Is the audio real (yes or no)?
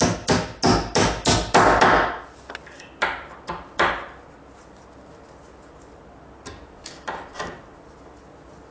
yes